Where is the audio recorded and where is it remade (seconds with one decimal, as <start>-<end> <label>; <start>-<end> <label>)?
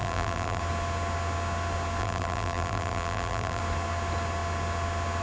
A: 0.0-0.6 remade; 0.6-2.0 recorded; 2.0-3.6 remade; 3.6-5.2 recorded